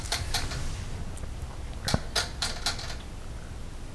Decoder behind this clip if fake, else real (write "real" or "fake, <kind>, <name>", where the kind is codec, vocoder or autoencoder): real